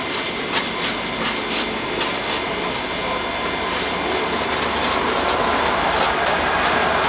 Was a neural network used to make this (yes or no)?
no